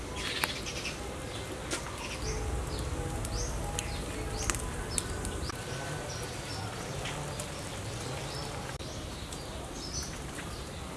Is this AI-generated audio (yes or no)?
no